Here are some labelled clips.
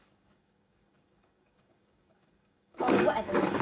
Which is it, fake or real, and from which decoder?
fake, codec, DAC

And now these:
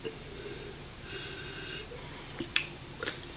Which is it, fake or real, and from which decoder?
real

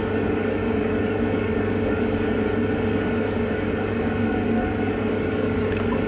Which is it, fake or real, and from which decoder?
fake, codec, DAC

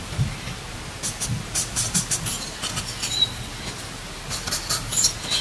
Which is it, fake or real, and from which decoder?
real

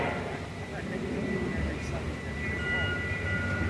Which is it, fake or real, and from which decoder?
real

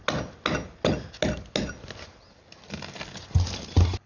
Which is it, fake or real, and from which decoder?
real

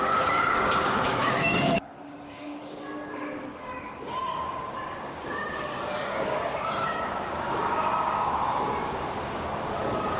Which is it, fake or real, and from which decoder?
fake, codec, DAC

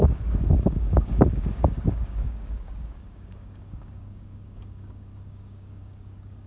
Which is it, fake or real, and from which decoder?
fake, codec, DAC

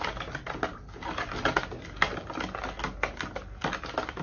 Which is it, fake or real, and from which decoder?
real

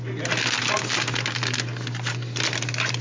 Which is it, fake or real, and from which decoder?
real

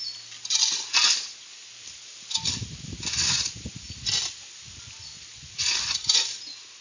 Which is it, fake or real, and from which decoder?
real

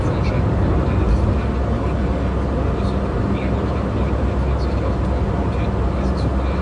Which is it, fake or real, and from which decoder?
real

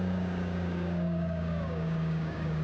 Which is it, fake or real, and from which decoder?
fake, codec, DAC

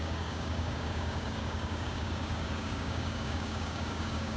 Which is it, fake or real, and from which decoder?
fake, codec, DAC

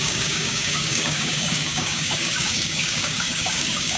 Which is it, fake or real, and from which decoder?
fake, codec, DAC